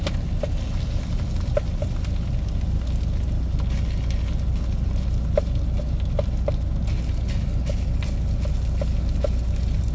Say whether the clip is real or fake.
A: real